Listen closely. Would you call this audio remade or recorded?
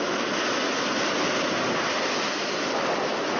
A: recorded